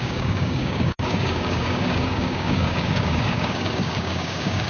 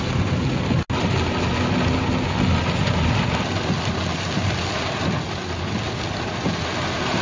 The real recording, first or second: second